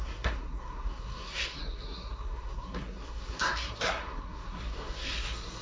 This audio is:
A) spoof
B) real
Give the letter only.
A